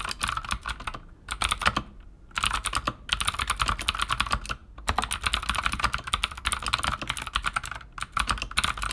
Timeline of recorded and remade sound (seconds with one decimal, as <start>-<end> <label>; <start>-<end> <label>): 0.0-8.9 recorded